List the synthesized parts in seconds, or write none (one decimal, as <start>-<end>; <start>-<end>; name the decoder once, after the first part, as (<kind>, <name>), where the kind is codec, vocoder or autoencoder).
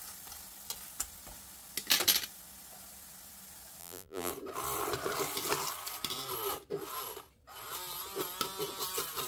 3.8-4.3 (vocoder, BigVGAN v2)